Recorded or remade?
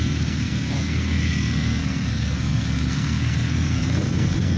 remade